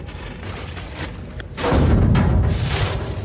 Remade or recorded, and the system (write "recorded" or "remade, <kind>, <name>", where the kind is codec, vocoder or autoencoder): remade, vocoder, BigVGAN v2